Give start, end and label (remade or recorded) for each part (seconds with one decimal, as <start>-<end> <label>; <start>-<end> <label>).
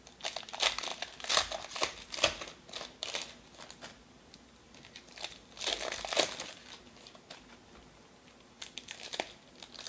0.0-9.9 recorded